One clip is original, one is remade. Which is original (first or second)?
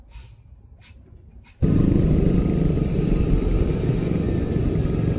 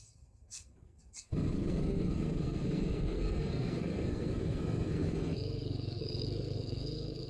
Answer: first